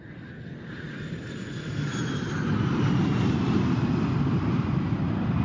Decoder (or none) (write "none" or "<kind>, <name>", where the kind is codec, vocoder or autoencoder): none